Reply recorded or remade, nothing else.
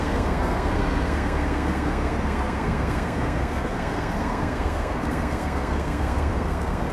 remade